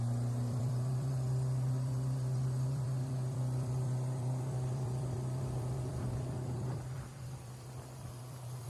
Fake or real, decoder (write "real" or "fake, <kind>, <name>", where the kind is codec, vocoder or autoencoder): fake, vocoder, BigVGAN v2